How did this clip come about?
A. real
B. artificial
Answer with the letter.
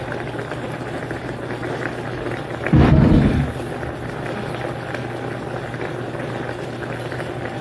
A